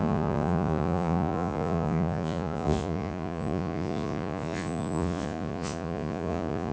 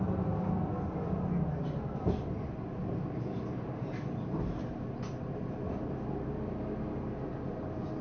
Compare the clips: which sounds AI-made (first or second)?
first